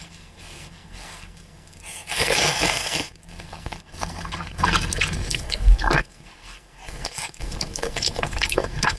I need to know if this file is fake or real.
fake